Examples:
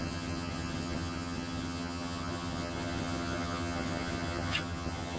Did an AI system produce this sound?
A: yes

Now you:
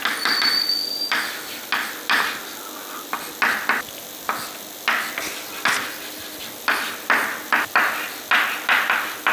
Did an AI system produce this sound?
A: no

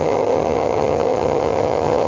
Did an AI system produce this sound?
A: yes